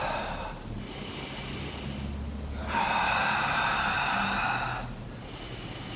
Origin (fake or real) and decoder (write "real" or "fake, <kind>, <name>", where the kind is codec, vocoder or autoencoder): real